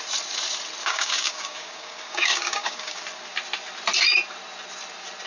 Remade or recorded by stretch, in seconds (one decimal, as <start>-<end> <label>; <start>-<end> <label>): 0.0-0.8 recorded; 0.8-3.0 remade; 3.0-5.3 recorded